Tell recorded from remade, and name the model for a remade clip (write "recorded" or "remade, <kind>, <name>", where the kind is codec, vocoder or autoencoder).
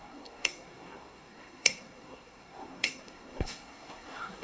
remade, codec, SNAC